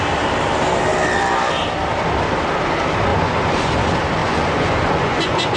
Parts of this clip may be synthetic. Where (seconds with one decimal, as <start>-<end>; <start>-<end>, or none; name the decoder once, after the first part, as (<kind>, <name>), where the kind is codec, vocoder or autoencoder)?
3.1-3.7 (vocoder, Vocos); 4.2-5.6